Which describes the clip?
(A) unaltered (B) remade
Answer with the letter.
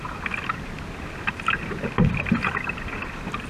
A